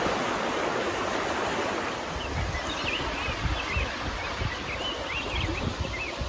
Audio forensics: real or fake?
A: real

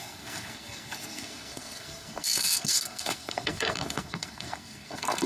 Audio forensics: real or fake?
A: fake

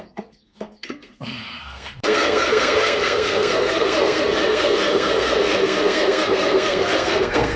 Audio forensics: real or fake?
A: fake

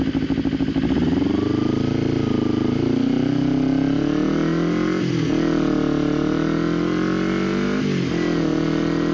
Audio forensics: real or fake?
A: real